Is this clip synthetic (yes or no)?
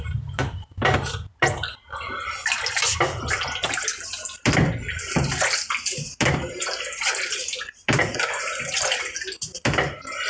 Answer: no